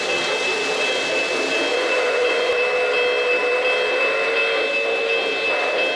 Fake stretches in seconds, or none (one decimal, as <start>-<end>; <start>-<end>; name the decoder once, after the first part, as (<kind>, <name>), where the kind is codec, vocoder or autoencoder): 1.7-2.5 (vocoder, Vocos)